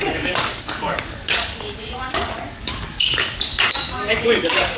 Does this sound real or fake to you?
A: fake